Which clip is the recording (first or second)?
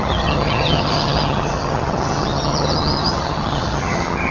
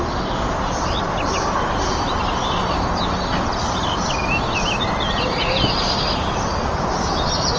second